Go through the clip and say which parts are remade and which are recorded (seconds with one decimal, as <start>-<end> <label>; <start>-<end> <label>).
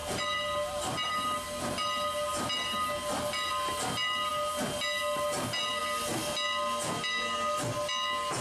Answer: 0.0-8.4 recorded